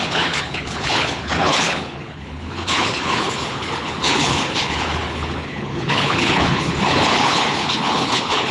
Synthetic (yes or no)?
yes